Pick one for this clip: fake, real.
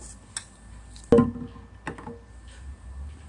real